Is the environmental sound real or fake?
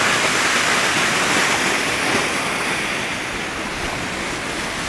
real